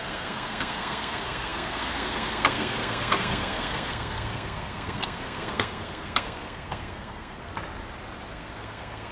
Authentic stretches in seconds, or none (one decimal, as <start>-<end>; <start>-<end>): 7.5-8.3